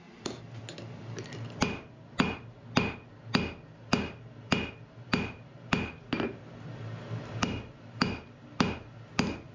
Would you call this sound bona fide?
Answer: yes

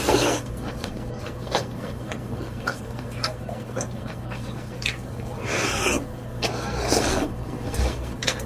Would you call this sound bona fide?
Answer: no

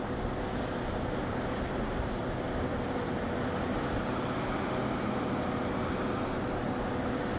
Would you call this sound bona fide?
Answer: yes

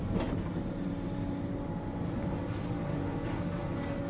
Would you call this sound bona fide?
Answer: yes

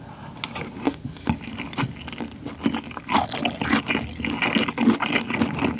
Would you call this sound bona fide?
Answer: yes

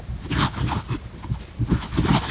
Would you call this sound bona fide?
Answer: yes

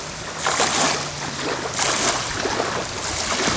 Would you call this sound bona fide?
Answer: yes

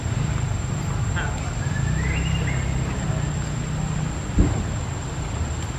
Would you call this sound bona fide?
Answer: yes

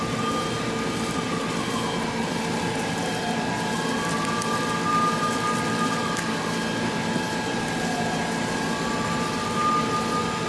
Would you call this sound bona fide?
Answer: yes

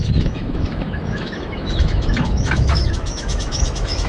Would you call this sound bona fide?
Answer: no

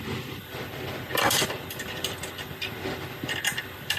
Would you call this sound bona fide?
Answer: yes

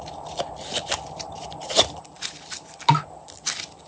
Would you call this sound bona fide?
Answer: yes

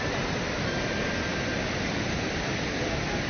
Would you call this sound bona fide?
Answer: yes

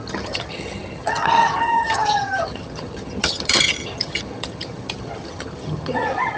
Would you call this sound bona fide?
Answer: no